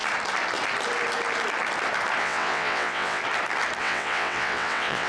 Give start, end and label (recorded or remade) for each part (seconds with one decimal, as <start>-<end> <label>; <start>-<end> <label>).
0.0-2.2 recorded; 2.2-3.2 remade; 3.2-3.8 recorded; 3.8-5.1 remade